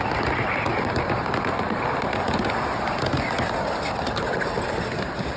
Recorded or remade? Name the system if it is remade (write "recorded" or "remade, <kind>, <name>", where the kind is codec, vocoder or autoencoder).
recorded